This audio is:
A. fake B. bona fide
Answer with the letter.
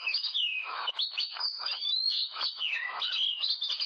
A